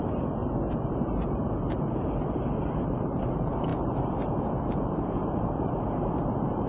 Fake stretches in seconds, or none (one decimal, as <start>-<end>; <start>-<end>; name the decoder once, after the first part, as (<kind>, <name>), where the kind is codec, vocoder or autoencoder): 0.0-6.7 (vocoder, BigVGAN v2)

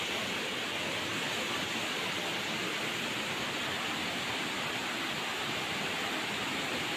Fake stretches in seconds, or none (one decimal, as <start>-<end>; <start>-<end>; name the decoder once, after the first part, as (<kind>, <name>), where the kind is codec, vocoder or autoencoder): 1.1-2.2 (vocoder, BigVGAN v2)